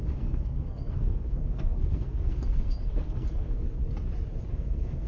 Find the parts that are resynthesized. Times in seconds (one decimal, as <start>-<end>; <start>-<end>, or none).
0.0-3.8; 4.5-5.1